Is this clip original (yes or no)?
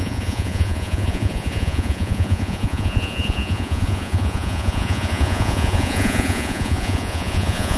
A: no